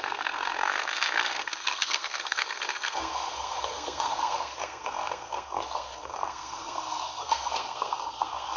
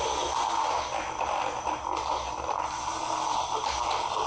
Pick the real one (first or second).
second